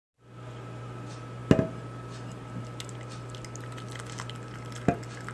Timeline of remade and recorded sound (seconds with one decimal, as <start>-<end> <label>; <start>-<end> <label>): 0.0-5.3 recorded